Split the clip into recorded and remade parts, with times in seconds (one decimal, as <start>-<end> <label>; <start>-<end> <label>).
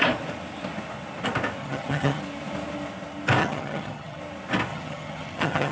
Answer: 0.0-1.6 recorded; 1.6-2.2 remade; 2.2-3.4 recorded; 3.4-4.2 remade; 4.2-4.7 recorded; 4.7-5.7 remade